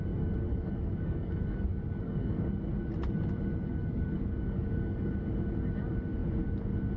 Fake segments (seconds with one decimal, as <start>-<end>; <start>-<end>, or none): 0.5-2.5; 3.7-5.1